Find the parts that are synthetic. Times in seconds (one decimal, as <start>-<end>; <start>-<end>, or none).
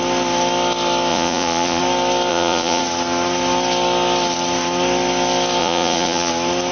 1.1-1.8; 2.3-2.8; 5.6-6.3